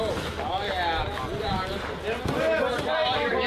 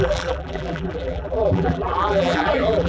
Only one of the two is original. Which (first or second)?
first